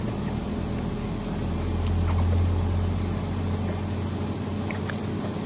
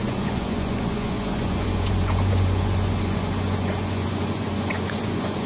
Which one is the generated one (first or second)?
second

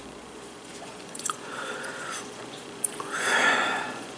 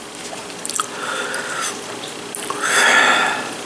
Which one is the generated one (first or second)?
first